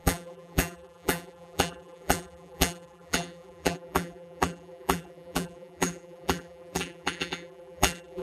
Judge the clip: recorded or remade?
remade